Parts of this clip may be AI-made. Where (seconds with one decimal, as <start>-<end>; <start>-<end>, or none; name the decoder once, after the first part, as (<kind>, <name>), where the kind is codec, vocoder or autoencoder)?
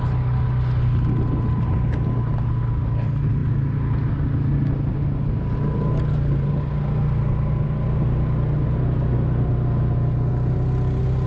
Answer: none